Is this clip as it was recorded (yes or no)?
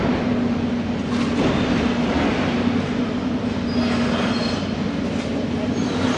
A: yes